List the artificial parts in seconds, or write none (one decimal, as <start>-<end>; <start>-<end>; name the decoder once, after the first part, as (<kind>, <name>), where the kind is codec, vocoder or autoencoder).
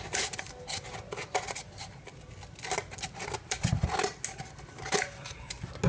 none